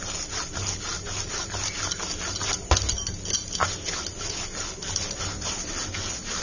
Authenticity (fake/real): real